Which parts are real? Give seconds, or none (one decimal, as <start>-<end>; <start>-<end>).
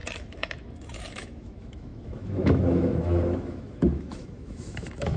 none